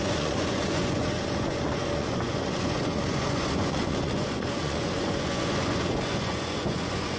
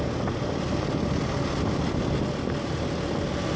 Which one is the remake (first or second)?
first